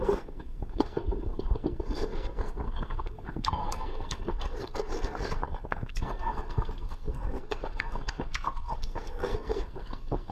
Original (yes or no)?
no